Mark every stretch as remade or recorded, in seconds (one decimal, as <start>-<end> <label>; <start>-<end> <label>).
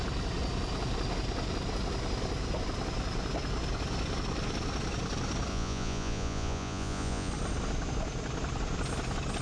0.0-5.5 recorded; 5.5-7.3 remade; 7.3-9.4 recorded